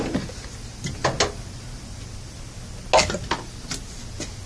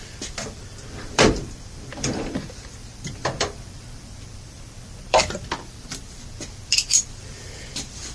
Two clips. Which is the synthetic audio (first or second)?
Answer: second